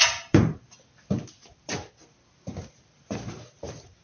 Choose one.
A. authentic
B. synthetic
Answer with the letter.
A